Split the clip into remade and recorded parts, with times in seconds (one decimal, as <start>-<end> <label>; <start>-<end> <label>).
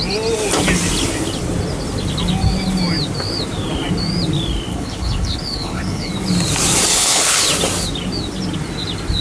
0.0-4.7 recorded; 4.7-6.1 remade; 6.1-6.9 recorded; 6.9-7.5 remade; 7.5-9.2 recorded